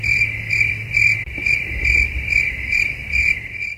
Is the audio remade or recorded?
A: remade